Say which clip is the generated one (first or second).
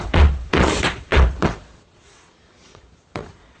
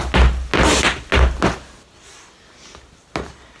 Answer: first